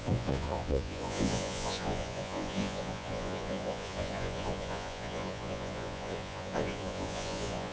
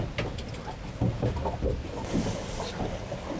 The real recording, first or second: second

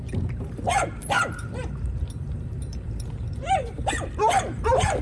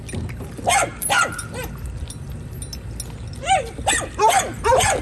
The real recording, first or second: second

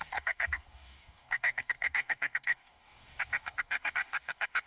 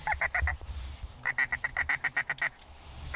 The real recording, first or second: second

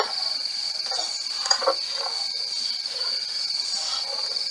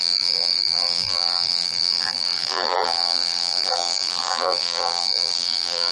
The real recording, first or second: first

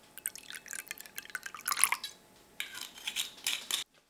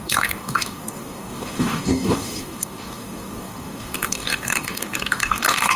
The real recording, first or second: first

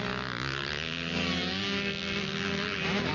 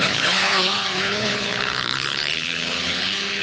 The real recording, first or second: first